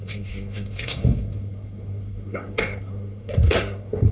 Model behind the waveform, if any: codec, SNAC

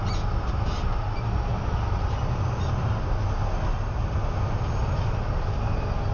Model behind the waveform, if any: none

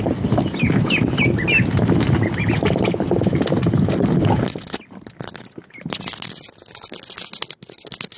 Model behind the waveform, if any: none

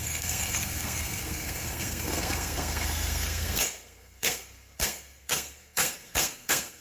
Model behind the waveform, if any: codec, SNAC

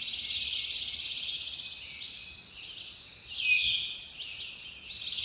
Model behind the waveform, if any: none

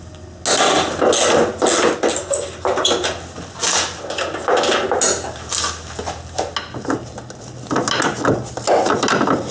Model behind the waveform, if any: none